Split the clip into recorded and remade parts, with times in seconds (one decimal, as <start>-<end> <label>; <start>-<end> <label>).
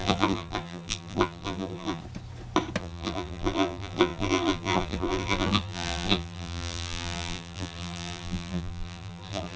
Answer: 0.0-2.0 remade; 2.0-2.8 recorded; 2.8-9.6 remade